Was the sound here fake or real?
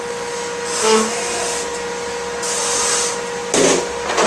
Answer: real